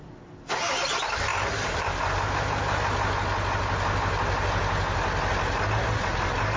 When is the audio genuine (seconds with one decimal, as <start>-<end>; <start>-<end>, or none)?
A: 0.0-6.6